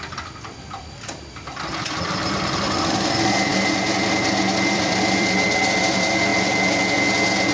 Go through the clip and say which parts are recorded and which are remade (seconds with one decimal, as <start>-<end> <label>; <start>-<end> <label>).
0.0-6.3 remade; 6.3-7.5 recorded